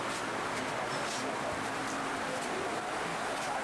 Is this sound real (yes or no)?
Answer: yes